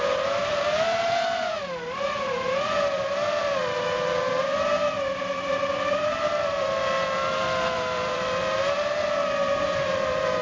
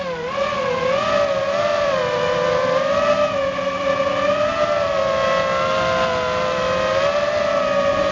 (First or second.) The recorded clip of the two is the second